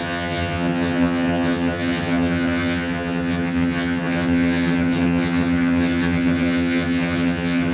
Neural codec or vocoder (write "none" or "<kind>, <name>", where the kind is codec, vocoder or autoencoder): vocoder, HiFi-GAN